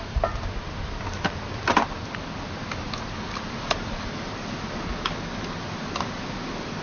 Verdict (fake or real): real